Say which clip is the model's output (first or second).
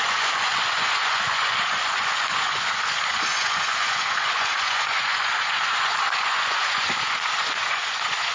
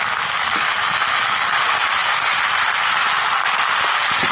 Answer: first